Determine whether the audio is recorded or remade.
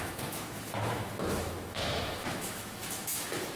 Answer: remade